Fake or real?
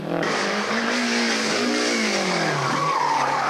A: fake